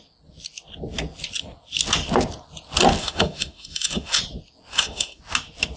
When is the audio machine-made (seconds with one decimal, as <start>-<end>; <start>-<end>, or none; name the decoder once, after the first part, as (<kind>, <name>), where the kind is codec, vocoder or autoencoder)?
3.0-4.2 (autoencoder, DAC-VAE); 4.7-5.2